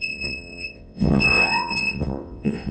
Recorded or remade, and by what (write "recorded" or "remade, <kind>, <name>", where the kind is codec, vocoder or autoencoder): remade, vocoder, WaveNeXt